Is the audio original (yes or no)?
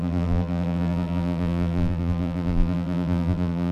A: no